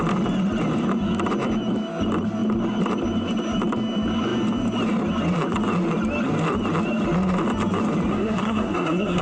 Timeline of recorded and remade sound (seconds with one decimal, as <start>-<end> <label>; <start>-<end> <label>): 0.0-8.1 recorded; 8.1-9.2 remade